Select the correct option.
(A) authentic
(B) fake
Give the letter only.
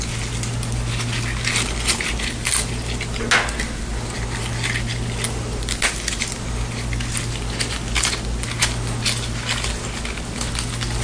A